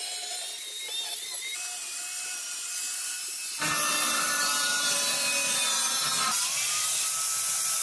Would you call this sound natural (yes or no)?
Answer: yes